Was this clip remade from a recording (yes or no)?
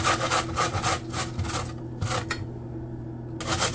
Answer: no